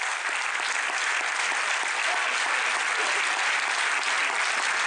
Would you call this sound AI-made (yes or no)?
no